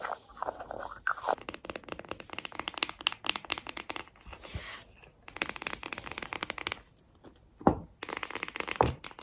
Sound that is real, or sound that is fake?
real